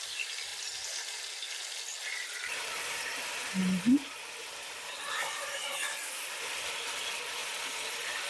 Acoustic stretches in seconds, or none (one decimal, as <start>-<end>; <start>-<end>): 0.5-2.3; 3.6-4.5; 7.4-8.3